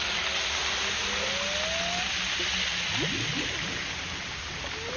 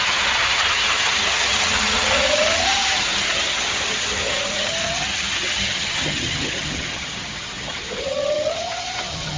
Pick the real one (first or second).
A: first